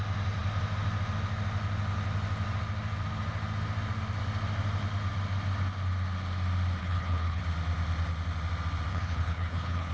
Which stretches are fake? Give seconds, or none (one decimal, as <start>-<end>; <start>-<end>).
6.8-7.4; 8.9-9.9